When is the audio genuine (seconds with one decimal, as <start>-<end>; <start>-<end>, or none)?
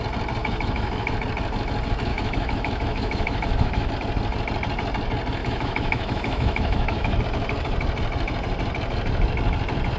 0.0-0.4; 1.1-2.1; 3.9-5.4; 7.2-10.0